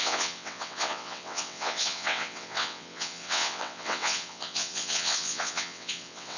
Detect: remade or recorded remade